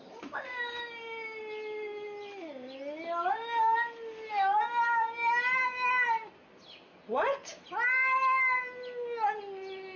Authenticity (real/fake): real